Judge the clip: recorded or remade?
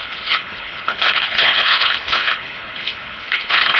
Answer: remade